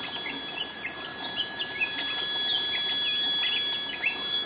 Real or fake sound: real